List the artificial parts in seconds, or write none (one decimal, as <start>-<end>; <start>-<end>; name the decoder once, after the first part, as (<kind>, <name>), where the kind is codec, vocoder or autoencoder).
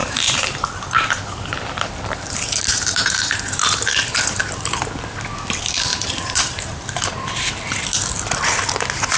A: 0.0-4.5 (vocoder, BigVGAN v2); 5.9-7.1